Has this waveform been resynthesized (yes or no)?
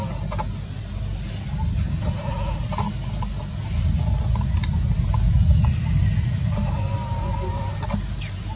no